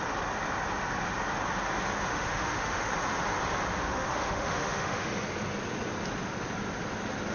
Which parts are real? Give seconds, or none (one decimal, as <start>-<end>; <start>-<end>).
0.0-2.1; 2.9-3.8; 5.1-7.3